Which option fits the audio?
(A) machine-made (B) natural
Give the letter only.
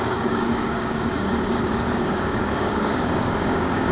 A